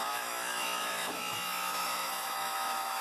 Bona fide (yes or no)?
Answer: no